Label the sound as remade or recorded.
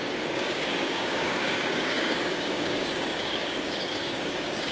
remade